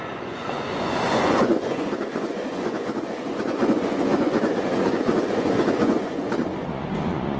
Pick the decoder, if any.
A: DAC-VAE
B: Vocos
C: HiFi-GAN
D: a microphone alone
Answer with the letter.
B